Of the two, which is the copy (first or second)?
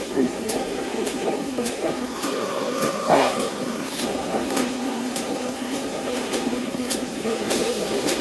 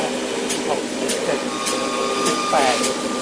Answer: first